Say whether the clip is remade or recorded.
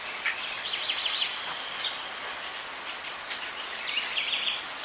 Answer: remade